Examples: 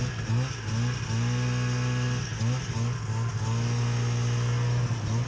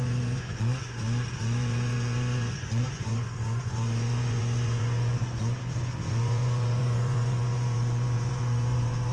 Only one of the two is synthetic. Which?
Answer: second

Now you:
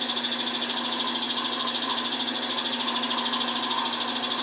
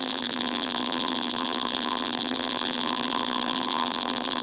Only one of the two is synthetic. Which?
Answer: second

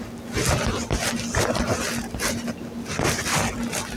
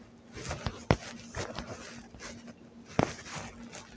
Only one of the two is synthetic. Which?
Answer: first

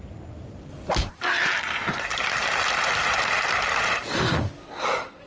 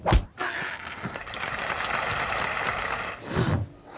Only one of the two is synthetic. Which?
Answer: first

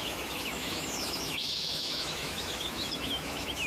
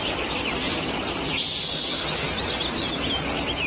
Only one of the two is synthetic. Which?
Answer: first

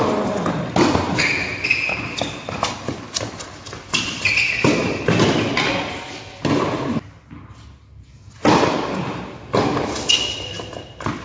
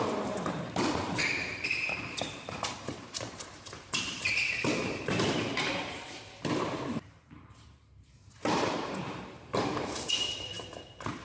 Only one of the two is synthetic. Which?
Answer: second